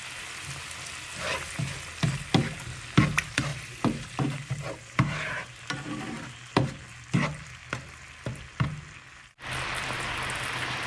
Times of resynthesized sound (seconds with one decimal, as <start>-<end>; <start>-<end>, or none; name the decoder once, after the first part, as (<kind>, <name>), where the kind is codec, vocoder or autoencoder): 3.5-5.6 (vocoder, BigVGAN v2)